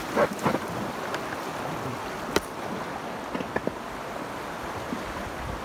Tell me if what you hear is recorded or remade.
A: recorded